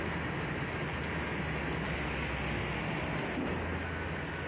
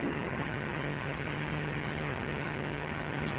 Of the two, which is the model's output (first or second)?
second